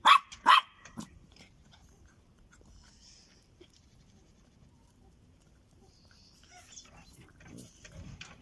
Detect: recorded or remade remade